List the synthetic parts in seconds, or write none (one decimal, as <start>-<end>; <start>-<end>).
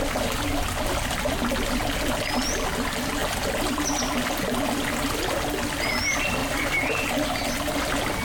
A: 6.4-7.1